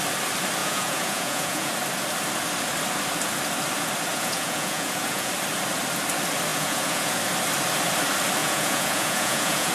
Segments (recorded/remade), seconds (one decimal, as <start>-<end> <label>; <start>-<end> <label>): 0.0-0.6 recorded; 0.6-1.7 remade; 1.7-4.1 recorded; 4.1-5.3 remade; 5.3-6.5 recorded; 6.5-7.2 remade; 7.2-8.4 recorded; 8.4-9.7 remade